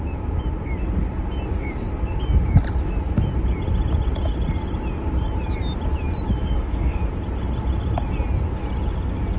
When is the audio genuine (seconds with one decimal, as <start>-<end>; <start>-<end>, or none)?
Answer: 0.0-6.4; 7.0-9.4